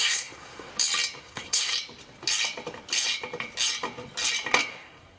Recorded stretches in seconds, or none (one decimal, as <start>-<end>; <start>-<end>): 0.7-1.2; 1.7-4.7